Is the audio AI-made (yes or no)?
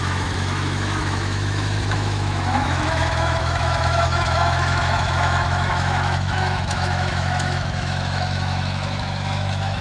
yes